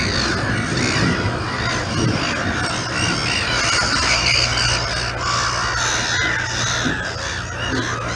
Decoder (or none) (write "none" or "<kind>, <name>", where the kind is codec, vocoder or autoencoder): none